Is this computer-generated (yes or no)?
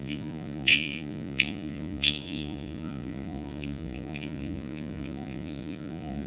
yes